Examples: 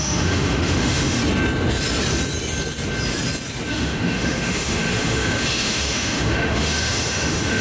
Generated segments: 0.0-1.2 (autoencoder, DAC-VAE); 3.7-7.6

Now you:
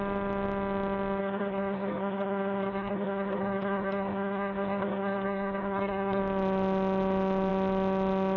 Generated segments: 1.2-6.2 (codec, SNAC)

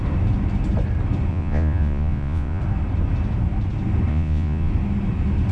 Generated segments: 1.3-2.6 (vocoder, Vocos); 4.1-4.7

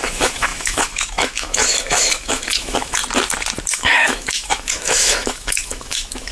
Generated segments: 0.0-3.0 (autoencoder, DAC-VAE); 3.7-6.3

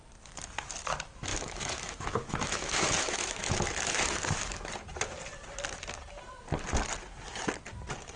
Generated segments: 1.3-4.7 (autoencoder, DAC-VAE)

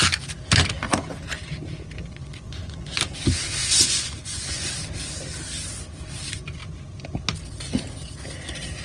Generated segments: 2.0-2.9 (vocoder, Vocos); 3.6-4.7

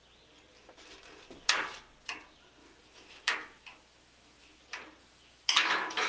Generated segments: 2.6-4.6 (autoencoder, DAC-VAE); 5.0-6.1